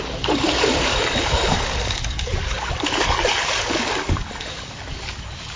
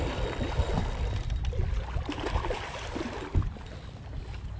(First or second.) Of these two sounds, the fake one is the first